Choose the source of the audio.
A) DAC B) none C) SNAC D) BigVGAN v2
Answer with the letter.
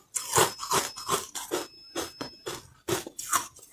B